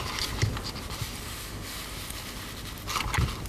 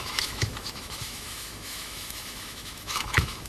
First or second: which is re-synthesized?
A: second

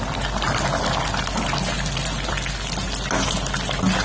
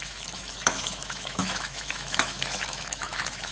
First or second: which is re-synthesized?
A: second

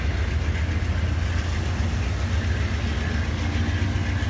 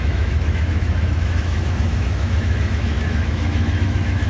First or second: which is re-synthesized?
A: second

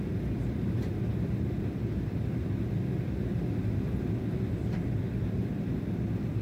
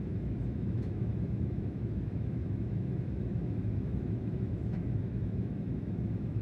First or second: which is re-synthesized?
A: second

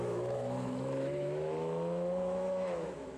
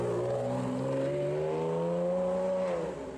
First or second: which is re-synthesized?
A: first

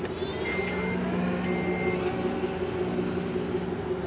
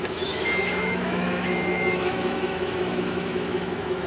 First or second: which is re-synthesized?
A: second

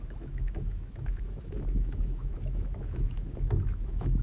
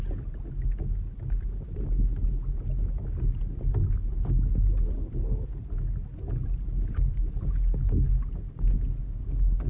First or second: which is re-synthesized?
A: first